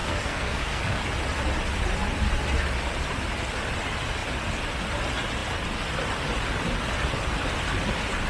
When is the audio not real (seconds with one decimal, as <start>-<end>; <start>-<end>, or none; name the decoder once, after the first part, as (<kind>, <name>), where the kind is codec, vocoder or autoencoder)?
0.0-1.0 (codec, SNAC)